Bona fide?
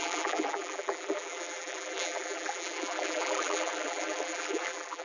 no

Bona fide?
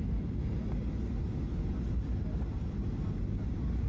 yes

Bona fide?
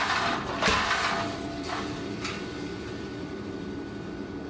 yes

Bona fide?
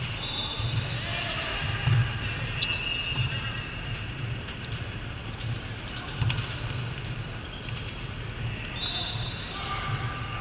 yes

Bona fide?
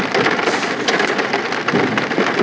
yes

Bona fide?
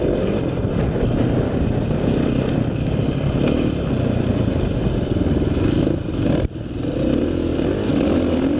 yes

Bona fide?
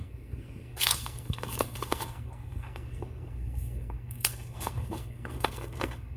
no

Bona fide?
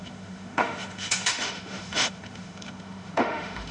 no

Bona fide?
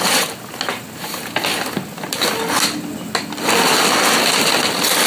yes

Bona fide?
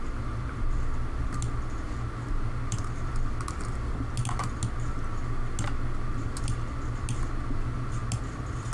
yes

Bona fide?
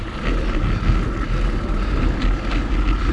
yes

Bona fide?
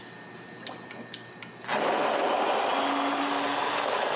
yes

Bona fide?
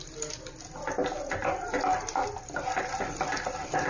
yes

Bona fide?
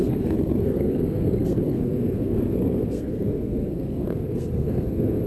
no